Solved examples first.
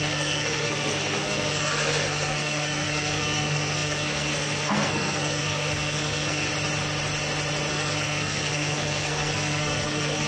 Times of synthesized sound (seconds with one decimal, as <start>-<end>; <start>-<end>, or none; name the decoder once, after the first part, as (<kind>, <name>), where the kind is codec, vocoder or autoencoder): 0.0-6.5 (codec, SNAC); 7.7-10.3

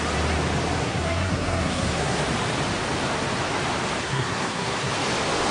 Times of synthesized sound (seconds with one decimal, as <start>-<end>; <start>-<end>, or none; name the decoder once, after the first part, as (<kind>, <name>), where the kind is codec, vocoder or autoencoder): 0.8-2.2 (codec, SNAC); 4.0-4.9

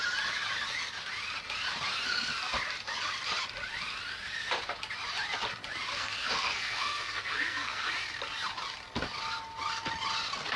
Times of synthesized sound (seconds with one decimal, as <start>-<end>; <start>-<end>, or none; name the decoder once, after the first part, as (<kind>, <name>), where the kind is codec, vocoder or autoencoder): 5.9-7.9 (codec, SNAC)